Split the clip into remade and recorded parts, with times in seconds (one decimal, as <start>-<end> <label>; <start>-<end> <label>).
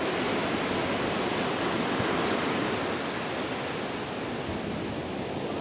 0.0-5.6 recorded